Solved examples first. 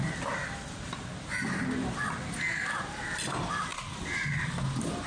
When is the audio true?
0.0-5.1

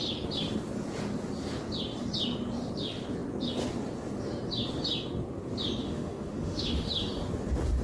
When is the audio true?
0.0-5.8; 6.9-7.8

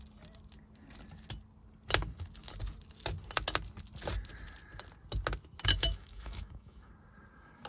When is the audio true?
0.0-5.7; 6.9-7.7

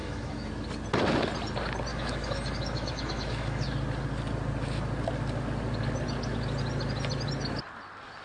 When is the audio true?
0.5-1.9; 3.6-8.2

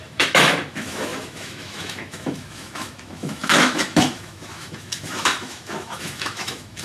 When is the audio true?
none

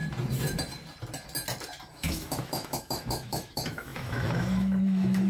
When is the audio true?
0.0-1.9

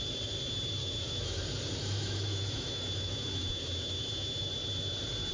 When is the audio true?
0.0-0.8; 1.4-1.8; 4.5-5.3